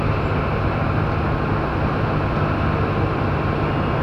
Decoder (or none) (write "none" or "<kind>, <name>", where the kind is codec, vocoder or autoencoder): none